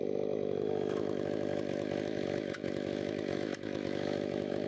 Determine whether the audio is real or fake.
fake